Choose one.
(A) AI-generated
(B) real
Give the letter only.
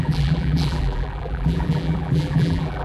A